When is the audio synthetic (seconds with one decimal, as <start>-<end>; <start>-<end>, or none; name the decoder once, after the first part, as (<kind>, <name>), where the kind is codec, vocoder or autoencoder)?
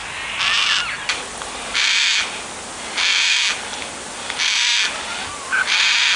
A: none